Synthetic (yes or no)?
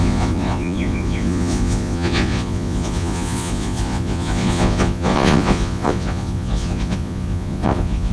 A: yes